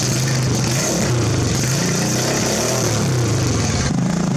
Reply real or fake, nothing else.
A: real